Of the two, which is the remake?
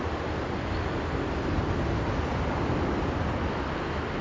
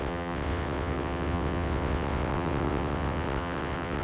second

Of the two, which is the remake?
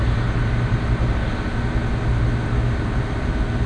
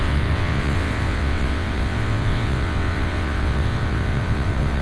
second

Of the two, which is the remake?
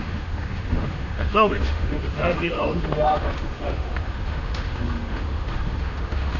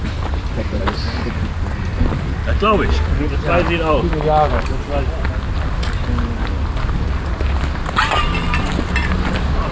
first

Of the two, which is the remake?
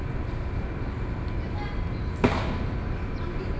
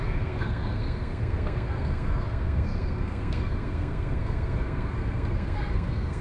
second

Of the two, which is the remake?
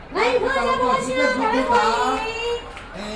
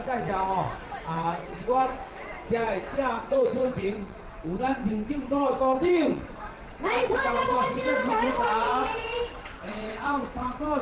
second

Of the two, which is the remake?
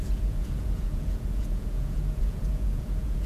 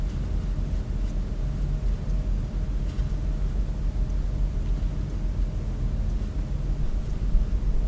first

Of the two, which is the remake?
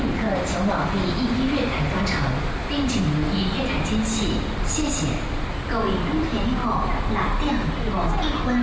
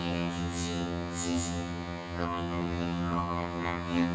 second